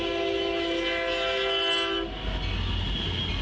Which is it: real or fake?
real